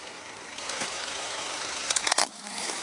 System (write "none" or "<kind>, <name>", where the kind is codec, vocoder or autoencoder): codec, SNAC